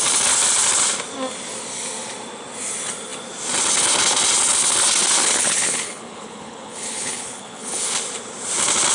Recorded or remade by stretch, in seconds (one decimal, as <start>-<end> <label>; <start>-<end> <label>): 0.0-5.2 recorded; 5.2-7.8 remade; 7.8-8.9 recorded